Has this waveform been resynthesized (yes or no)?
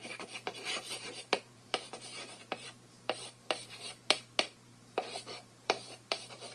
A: yes